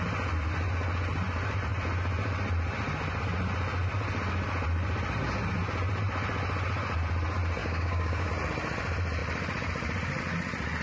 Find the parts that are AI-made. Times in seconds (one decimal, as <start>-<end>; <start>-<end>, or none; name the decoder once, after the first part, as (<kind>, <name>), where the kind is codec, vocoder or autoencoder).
7.6-8.3 (codec, DAC)